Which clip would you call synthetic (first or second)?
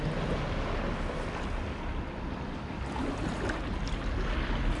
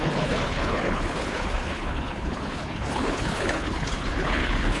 second